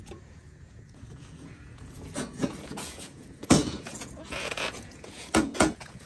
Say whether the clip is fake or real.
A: fake